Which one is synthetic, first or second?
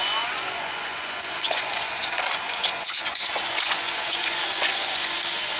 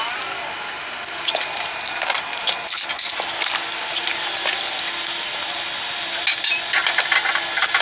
first